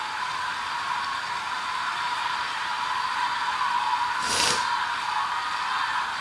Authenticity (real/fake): fake